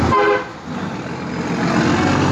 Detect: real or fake real